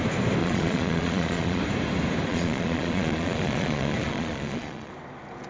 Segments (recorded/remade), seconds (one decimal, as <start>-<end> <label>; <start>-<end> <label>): 0.0-0.4 recorded; 0.4-1.6 remade; 1.6-2.3 recorded; 2.3-4.9 remade; 4.9-5.5 recorded